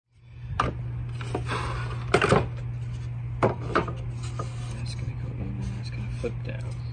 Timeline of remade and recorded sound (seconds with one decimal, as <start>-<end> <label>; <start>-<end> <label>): 0.0-6.9 recorded